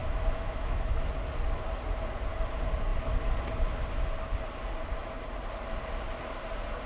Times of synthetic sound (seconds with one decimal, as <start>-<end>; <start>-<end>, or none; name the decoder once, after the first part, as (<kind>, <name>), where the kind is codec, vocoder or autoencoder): 0.0-1.1 (autoencoder, DAC-VAE)